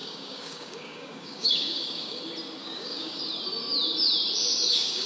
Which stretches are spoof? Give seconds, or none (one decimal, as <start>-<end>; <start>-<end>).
0.0-2.2; 2.6-3.2; 4.5-5.1